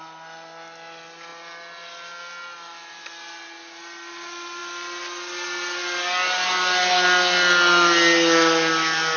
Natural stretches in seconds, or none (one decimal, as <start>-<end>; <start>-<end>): 0.0-9.2